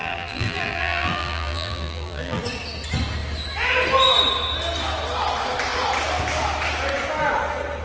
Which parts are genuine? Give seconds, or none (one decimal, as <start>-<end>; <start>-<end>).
2.4-7.8